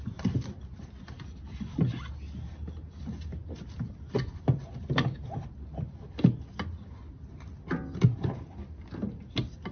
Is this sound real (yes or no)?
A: yes